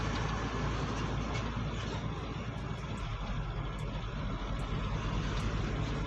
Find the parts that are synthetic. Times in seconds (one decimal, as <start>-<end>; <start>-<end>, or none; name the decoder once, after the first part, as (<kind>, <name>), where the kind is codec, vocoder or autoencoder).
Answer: none